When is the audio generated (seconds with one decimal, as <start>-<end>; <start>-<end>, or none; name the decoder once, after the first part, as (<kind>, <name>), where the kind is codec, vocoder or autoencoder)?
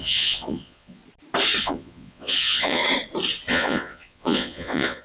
0.0-1.0 (vocoder, Vocos); 1.6-2.8; 3.5-5.0